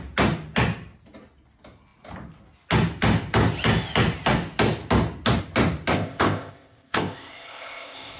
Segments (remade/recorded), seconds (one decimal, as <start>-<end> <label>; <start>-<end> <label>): 0.0-5.9 recorded; 5.9-8.2 remade